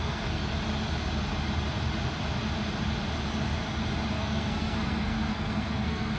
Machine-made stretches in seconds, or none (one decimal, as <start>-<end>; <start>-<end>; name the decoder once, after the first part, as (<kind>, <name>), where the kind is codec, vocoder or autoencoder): 0.0-0.4 (codec, SNAC); 4.1-6.2